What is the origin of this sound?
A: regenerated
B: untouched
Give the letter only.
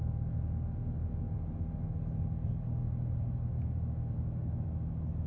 B